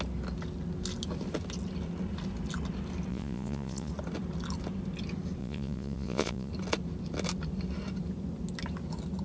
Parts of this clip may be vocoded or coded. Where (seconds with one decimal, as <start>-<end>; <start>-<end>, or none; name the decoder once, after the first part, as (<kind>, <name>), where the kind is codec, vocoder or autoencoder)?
3.1-3.9 (vocoder, Vocos); 5.4-6.5